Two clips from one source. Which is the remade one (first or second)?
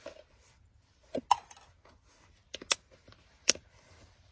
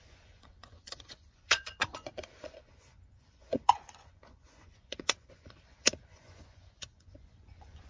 second